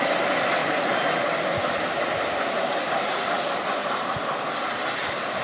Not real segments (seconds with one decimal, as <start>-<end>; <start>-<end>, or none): none